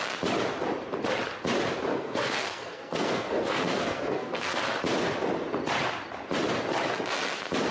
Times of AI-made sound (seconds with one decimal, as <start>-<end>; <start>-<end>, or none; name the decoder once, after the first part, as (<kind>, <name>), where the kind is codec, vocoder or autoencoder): 1.9-4.8 (codec, SNAC)